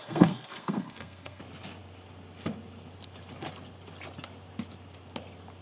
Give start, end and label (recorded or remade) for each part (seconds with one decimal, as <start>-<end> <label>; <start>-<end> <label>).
0.0-1.4 remade; 1.4-5.6 recorded